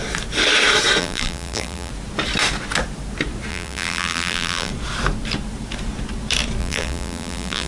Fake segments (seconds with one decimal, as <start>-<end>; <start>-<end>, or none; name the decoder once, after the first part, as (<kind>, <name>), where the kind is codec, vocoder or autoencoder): 1.0-1.9 (vocoder, BigVGAN v2); 3.5-4.7; 6.6-7.7